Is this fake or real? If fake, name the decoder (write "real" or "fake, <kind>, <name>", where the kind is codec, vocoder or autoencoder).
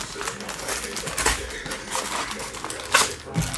real